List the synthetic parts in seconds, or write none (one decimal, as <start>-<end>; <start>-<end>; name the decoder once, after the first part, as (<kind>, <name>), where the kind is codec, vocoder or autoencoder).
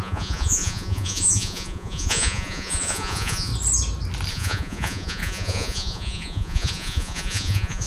0.0-3.5 (vocoder, Vocos); 4.3-7.9